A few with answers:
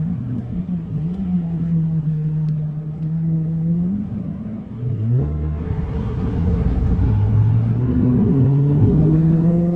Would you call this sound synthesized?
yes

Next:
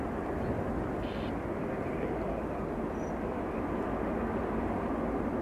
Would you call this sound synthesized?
no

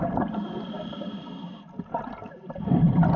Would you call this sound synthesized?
no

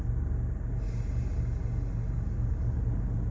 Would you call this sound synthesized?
no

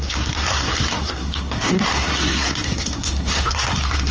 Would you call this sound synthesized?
yes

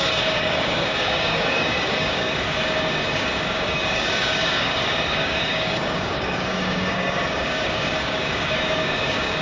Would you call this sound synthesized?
yes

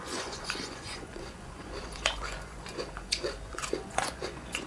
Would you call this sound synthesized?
yes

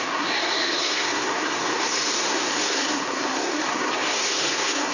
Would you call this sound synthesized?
yes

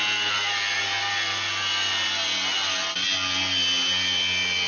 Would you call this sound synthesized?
no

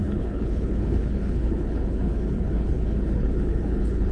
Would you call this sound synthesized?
yes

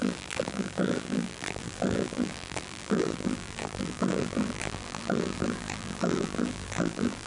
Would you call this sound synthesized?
yes